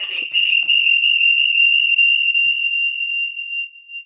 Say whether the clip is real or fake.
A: real